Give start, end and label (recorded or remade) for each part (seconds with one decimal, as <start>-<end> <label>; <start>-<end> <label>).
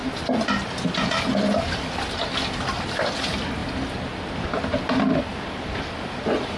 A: 0.0-1.6 recorded; 1.6-3.6 remade; 3.6-5.2 recorded; 5.2-6.6 remade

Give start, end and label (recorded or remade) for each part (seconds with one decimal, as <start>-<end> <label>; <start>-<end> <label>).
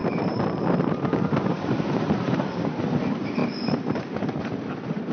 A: 0.0-2.8 remade; 2.8-5.1 recorded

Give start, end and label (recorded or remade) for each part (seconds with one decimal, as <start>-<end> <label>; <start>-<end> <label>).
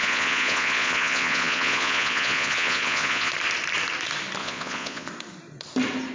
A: 0.0-3.3 remade; 3.3-4.4 recorded; 4.4-5.1 remade; 5.1-6.1 recorded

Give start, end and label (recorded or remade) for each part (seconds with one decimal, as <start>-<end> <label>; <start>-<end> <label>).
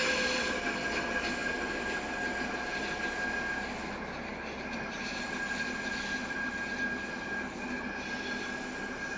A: 0.0-9.2 recorded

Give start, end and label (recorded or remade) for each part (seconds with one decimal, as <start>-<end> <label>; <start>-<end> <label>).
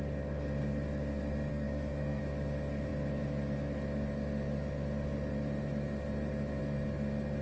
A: 0.0-1.5 recorded; 1.5-2.2 remade; 2.2-7.4 recorded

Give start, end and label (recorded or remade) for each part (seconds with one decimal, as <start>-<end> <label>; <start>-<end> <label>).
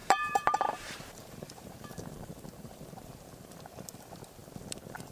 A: 0.0-3.1 remade; 3.1-5.1 recorded